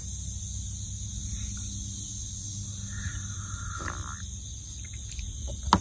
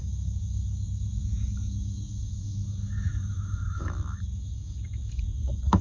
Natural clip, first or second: first